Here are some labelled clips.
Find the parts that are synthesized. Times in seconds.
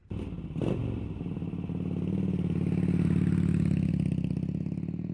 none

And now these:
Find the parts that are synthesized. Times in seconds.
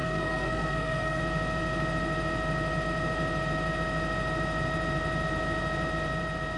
0.0-1.2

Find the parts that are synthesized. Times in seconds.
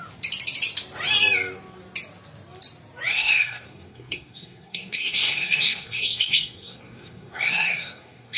3.1-8.4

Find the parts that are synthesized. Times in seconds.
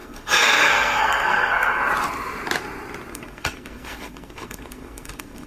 0.0-1.8; 3.1-5.5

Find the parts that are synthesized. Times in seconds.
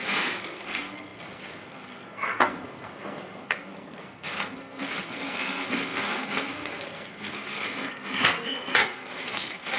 0.0-9.8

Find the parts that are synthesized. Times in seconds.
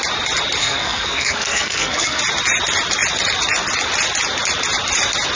0.6-2.2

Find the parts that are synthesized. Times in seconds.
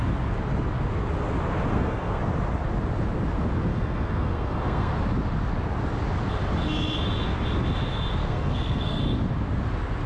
1.7-2.2; 3.7-4.9; 8.2-9.0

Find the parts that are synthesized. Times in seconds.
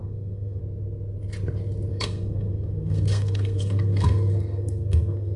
0.0-0.6; 1.9-5.4